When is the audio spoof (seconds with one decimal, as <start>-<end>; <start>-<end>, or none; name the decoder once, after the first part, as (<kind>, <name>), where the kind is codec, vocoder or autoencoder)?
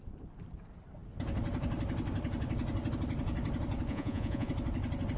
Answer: 3.9-4.5 (vocoder, Vocos)